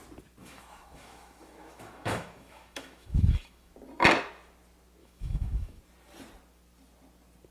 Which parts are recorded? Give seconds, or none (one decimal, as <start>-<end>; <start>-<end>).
0.0-0.4; 3.7-5.0; 5.8-7.5